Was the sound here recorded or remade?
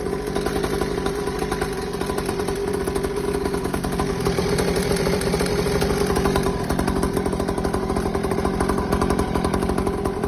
remade